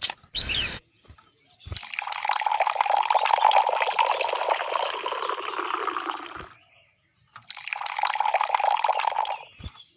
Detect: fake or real real